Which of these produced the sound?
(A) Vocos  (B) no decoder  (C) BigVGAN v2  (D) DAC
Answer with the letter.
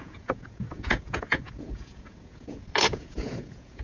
A